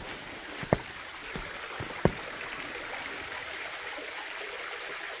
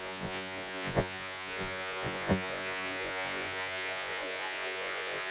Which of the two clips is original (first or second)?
first